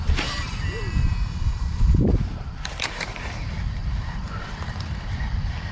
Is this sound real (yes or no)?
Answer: no